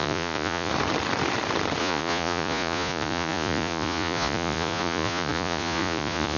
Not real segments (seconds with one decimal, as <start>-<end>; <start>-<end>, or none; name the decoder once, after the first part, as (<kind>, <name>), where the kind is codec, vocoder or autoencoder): 0.0-0.7 (vocoder, Vocos); 1.8-6.4

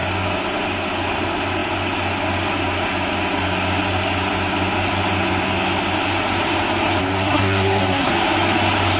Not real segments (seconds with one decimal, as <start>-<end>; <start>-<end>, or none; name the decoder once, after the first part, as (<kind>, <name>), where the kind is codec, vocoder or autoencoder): 7.0-8.1 (codec, SNAC)

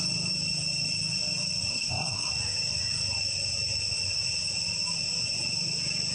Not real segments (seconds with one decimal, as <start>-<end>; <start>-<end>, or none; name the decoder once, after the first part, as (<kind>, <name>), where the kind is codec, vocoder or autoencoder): 1.7-2.3 (codec, SNAC)

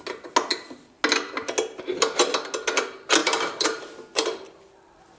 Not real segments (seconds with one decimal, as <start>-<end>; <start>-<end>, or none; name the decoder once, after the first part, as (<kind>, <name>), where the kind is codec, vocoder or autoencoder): 3.2-3.9 (vocoder, BigVGAN v2)

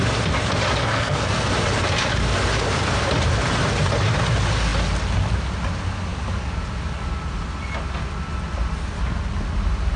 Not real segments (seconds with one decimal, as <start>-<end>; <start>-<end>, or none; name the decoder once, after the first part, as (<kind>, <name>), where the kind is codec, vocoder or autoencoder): 0.8-1.5 (codec, SNAC)

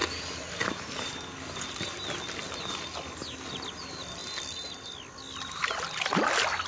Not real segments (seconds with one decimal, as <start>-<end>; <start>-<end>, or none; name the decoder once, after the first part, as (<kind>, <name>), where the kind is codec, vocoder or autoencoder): none

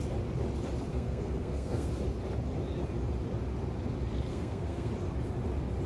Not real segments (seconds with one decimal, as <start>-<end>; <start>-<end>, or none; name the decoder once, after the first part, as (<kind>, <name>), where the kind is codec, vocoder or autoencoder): 0.9-1.9 (codec, SNAC); 4.3-4.9

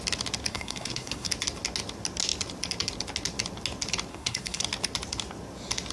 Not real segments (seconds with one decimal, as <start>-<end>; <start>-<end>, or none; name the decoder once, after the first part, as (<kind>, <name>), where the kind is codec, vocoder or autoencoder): 0.5-1.3 (codec, SNAC); 4.1-4.6